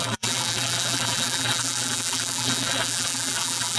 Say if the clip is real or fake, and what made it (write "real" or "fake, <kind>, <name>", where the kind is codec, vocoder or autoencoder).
fake, vocoder, BigVGAN v2